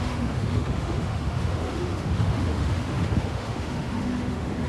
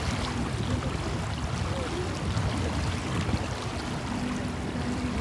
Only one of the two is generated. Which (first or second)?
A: first